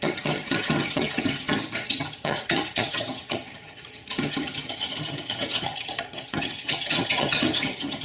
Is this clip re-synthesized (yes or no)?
yes